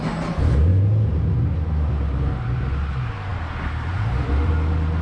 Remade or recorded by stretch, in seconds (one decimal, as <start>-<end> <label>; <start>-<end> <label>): 0.0-3.3 recorded; 3.3-4.5 remade; 4.5-5.0 recorded